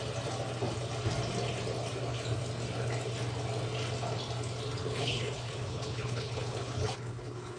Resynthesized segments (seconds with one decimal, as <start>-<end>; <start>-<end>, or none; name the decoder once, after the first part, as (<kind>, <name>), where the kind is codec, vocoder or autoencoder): 4.8-7.6 (codec, HILCodec)